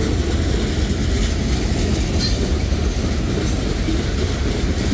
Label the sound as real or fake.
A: real